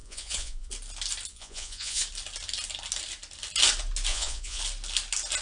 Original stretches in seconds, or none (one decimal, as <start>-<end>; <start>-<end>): 0.7-1.3; 2.0-4.1; 4.6-5.4